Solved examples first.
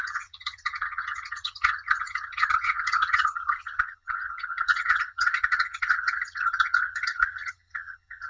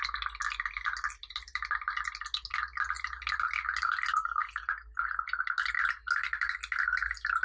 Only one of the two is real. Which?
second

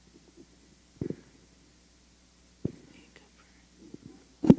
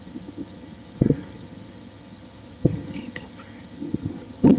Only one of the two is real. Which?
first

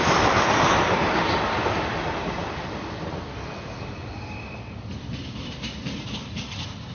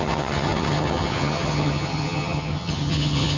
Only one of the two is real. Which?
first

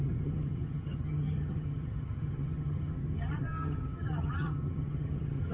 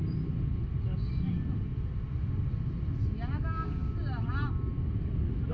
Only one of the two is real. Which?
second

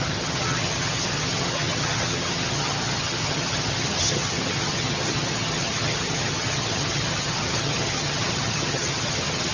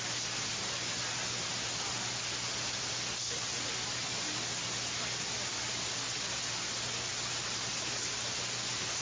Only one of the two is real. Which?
second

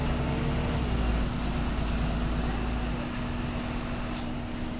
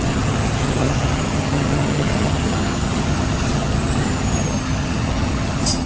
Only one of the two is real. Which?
first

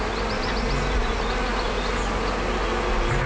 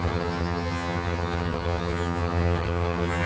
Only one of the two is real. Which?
first